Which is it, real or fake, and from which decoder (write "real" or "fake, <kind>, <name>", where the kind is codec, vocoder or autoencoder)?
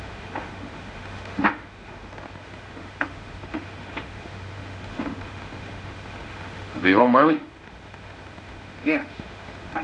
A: fake, autoencoder, DAC-VAE